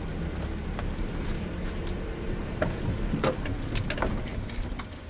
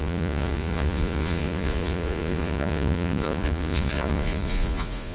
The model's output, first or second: second